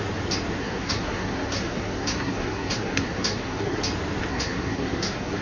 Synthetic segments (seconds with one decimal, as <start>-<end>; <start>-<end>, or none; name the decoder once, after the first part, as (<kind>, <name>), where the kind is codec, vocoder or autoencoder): 0.6-3.8 (codec, SNAC); 4.3-5.4